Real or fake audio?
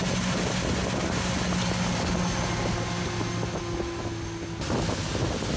real